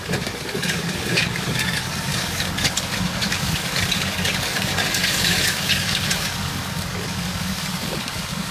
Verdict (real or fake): fake